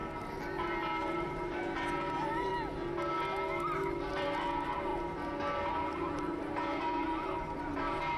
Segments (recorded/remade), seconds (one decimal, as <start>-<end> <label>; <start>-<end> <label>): 0.0-1.0 recorded; 1.0-2.5 remade; 2.5-4.1 recorded; 4.1-4.9 remade; 4.9-5.7 recorded; 5.7-8.2 remade